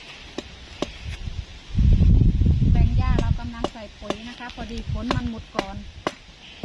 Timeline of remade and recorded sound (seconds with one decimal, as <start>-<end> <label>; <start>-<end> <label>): 0.0-6.6 recorded